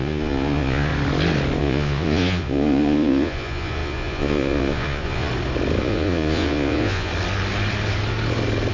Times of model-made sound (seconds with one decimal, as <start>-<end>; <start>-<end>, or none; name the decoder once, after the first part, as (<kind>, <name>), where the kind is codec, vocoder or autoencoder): 0.0-0.9 (vocoder, Vocos); 1.6-5.3; 5.8-7.1